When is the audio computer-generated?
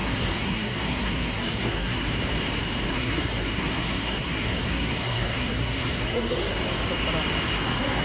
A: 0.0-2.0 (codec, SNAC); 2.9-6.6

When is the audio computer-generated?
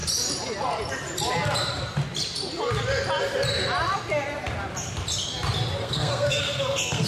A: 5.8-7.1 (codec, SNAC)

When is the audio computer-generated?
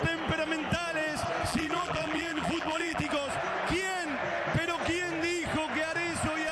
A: 1.5-3.1 (vocoder, BigVGAN v2)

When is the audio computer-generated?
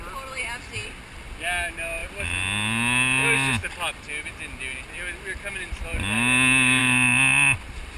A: none